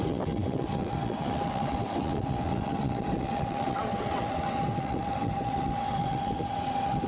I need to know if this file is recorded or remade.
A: remade